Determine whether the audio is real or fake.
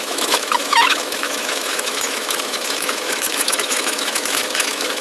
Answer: fake